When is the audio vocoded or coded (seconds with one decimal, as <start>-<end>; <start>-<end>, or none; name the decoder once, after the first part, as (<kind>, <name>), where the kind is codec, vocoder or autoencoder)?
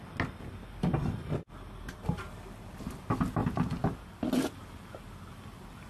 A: 3.4-4.2 (vocoder, BigVGAN v2)